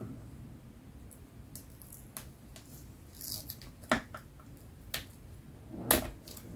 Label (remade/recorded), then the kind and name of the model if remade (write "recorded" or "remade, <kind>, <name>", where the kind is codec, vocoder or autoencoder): recorded